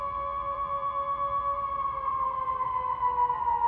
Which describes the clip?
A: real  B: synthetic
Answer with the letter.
B